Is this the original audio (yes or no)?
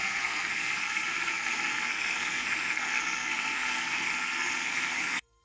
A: no